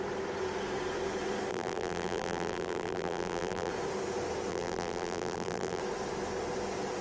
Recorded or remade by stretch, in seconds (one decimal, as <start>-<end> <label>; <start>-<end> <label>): 0.0-1.5 recorded; 1.5-3.7 remade; 3.7-4.5 recorded; 4.5-5.8 remade; 5.8-7.0 recorded